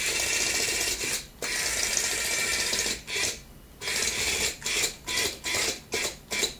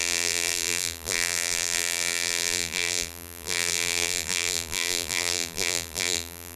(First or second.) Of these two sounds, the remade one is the second